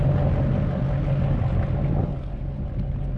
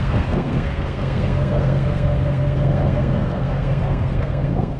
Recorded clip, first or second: first